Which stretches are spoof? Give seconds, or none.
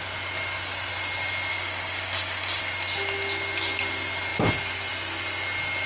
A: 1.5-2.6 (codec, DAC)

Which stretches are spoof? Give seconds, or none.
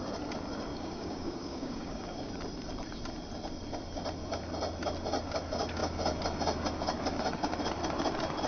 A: 0.7-2.3 (codec, DAC)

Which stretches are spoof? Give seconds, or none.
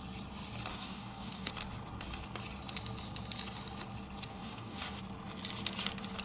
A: 0.7-1.5 (codec, DAC); 4.3-5.0